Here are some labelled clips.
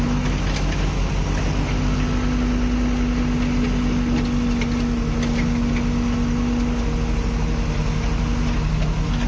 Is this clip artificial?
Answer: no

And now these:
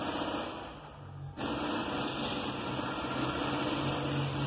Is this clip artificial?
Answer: no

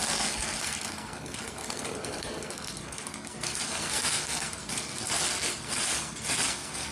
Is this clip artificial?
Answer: yes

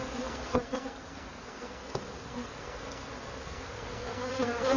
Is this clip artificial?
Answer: yes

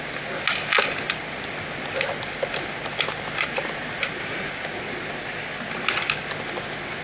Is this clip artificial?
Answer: no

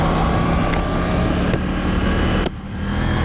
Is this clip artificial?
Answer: no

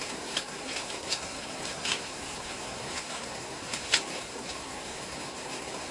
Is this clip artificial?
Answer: yes